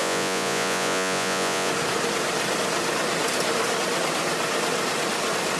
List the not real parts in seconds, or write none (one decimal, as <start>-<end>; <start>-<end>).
0.0-1.7